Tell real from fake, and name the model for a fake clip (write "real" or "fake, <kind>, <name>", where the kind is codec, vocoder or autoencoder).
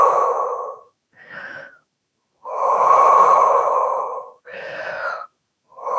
fake, autoencoder, DAC-VAE